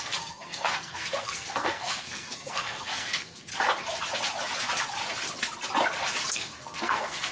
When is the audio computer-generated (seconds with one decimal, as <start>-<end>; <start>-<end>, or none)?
0.0-3.5; 6.3-7.3